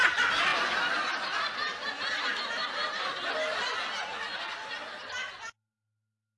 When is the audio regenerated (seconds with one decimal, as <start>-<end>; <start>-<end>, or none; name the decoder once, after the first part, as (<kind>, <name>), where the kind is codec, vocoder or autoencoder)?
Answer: none